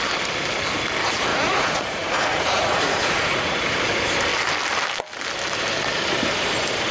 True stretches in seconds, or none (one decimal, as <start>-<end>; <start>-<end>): 0.0-1.3; 3.6-6.9